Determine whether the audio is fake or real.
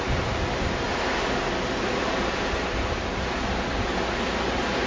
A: real